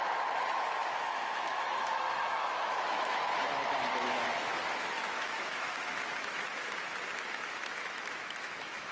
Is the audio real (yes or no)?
no